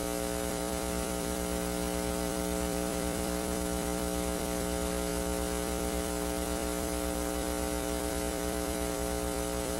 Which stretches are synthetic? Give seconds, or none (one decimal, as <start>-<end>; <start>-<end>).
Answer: 0.5-9.8